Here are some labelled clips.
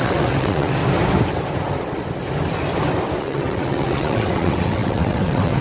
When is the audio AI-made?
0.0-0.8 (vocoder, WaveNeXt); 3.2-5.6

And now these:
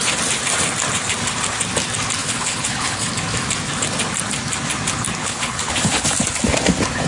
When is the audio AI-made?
2.2-3.1 (codec, HILCodec); 5.2-6.1

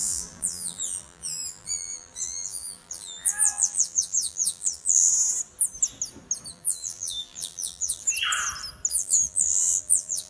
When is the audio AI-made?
0.0-5.1 (vocoder, BigVGAN v2); 6.5-8.0; 8.9-10.3

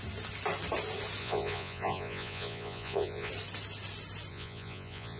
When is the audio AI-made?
1.2-3.3 (vocoder, Vocos); 4.3-5.2

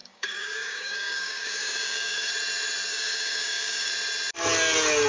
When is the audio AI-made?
0.0-2.3 (codec, DAC); 2.9-3.9